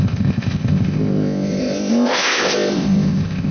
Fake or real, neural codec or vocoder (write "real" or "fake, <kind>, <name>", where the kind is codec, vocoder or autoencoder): fake, codec, ZipCodec